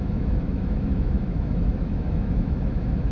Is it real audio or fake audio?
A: fake